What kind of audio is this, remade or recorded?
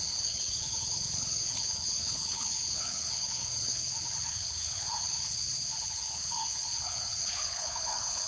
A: remade